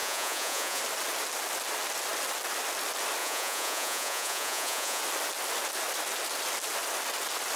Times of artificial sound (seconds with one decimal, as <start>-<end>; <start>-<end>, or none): 0.0-0.8; 3.2-5.0